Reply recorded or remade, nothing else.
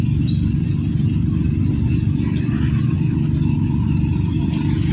recorded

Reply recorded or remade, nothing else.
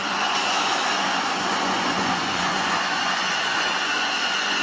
remade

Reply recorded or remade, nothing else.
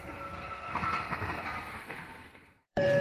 remade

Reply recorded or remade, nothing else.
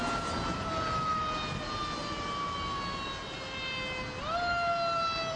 recorded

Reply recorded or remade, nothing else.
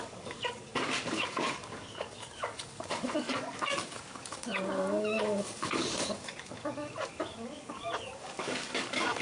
remade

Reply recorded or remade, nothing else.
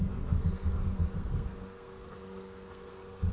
remade